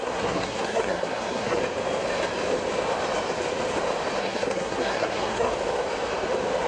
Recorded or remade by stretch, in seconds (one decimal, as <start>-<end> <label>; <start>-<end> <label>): 0.0-1.6 remade; 1.6-4.2 recorded; 4.2-5.5 remade; 5.5-6.7 recorded